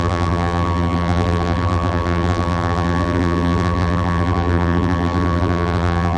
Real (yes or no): no